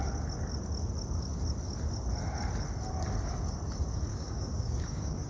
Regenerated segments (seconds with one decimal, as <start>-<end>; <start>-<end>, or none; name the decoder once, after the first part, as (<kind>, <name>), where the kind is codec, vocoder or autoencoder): 4.1-5.3 (codec, DAC)